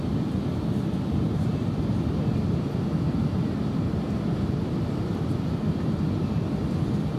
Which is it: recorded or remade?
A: remade